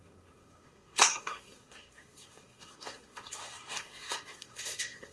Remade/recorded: remade